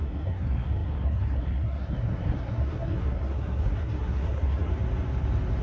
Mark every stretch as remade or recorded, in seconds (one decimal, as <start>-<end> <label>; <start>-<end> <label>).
0.0-4.7 remade; 4.7-5.6 recorded